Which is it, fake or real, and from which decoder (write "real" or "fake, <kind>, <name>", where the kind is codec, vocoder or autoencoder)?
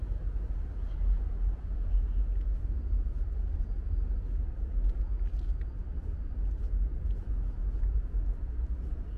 real